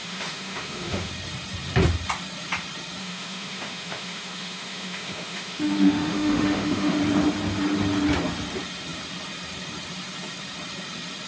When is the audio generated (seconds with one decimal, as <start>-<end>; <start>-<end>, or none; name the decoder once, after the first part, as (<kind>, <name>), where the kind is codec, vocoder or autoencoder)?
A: 0.0-1.1 (autoencoder, DAC-VAE); 3.0-7.0